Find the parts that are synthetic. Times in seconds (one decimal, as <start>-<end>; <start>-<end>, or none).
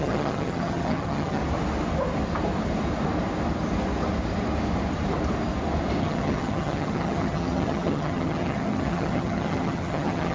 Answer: 0.0-1.4; 6.0-10.3